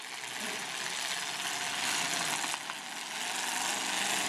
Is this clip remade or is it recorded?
recorded